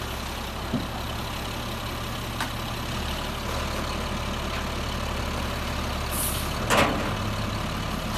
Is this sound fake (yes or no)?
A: no